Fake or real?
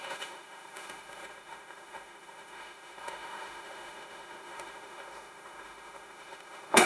fake